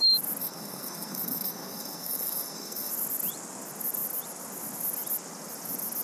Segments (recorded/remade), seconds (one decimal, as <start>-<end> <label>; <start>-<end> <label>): 0.0-0.4 recorded; 0.4-2.9 remade; 2.9-6.0 recorded